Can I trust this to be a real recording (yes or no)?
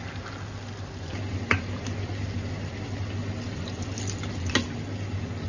yes